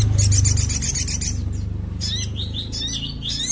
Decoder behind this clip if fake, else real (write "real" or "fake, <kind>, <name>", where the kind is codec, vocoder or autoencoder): real